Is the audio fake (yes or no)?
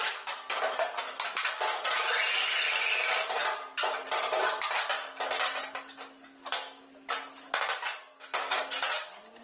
no